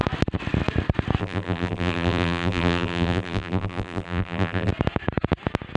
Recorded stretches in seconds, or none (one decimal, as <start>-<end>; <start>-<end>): 0.0-1.2; 4.7-5.8